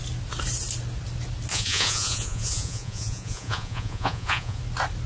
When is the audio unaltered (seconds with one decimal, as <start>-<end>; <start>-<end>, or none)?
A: 0.0-1.5; 4.6-5.1